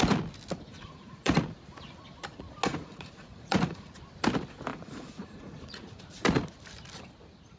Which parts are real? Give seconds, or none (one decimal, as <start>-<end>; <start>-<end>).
0.0-0.7; 1.4-2.7; 4.0-4.7; 6.0-7.6